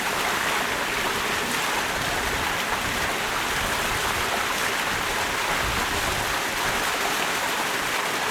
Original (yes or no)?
yes